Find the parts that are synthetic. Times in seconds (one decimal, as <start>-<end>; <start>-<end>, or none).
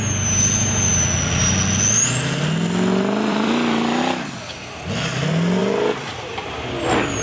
3.3-4.0; 5.6-6.3